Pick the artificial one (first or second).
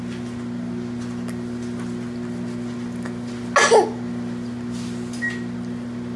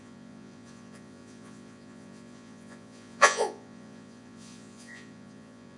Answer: second